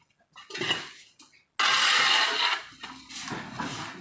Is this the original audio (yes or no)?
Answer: yes